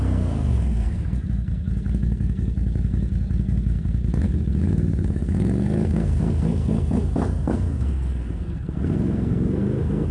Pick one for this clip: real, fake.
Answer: fake